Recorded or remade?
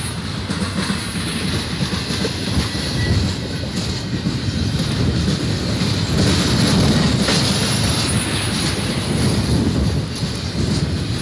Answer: recorded